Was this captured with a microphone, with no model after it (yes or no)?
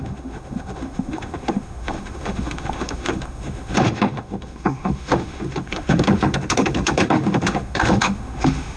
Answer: no